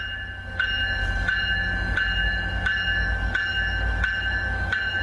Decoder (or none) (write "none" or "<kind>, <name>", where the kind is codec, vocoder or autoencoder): autoencoder, DAC-VAE